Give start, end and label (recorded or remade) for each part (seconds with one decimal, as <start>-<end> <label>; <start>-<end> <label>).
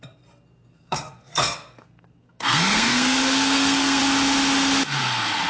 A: 0.0-0.7 recorded; 0.7-4.0 remade; 4.0-5.5 recorded